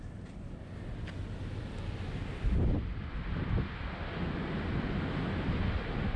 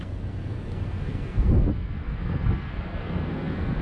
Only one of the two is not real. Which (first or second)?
second